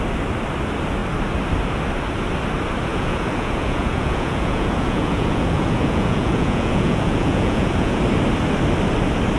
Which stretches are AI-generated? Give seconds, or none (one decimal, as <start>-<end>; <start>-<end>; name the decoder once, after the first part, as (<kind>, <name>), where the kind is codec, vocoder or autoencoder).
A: 2.9-8.0 (vocoder, Vocos)